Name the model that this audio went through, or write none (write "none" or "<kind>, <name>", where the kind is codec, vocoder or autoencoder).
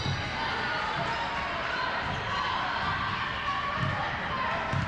none